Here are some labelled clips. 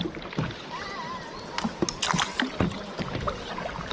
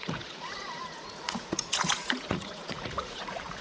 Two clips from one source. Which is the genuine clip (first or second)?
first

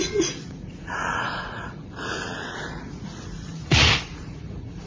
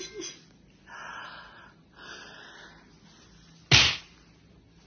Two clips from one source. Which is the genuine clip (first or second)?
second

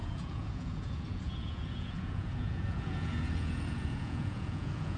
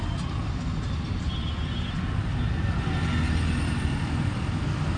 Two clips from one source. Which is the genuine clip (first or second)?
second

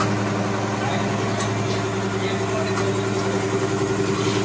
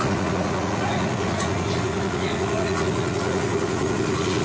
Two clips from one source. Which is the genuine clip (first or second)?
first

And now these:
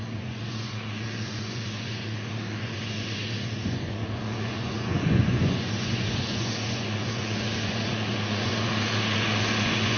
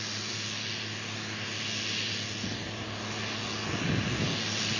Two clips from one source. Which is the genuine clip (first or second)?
second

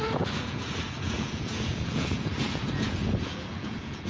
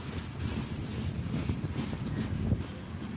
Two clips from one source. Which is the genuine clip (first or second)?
second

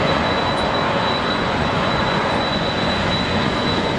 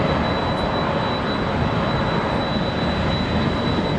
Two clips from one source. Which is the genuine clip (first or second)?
second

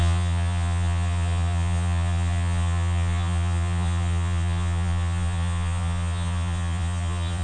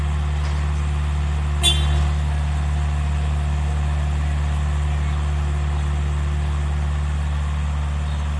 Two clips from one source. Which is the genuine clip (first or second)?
second